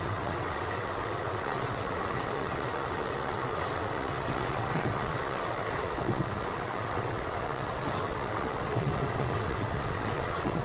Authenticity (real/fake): fake